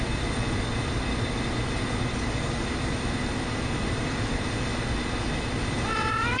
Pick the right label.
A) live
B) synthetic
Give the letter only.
A